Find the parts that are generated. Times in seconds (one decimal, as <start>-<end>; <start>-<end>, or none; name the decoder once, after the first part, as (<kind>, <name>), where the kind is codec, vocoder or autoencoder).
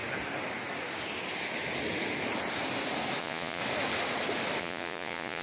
3.2-3.6 (vocoder, Vocos); 4.6-5.4